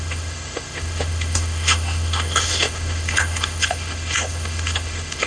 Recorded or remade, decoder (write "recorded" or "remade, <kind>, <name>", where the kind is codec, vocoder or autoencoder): remade, autoencoder, DAC-VAE